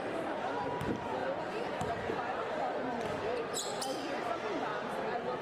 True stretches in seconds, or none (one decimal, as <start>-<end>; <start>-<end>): none

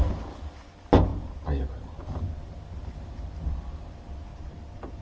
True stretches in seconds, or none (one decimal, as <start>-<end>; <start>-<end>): 0.0-1.1; 2.0-4.3

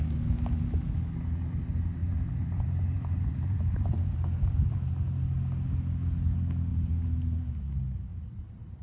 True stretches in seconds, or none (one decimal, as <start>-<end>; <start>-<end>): 0.0-2.0; 4.9-6.7; 7.5-8.1

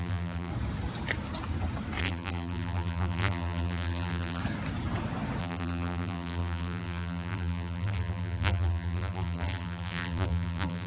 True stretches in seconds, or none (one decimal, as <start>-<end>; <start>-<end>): 0.5-2.0; 4.4-5.4

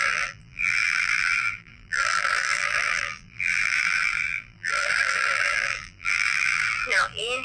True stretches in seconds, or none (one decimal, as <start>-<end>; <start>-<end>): none

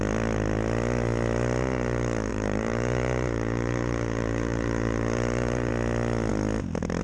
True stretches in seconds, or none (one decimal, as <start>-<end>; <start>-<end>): 0.0-2.3; 5.7-7.0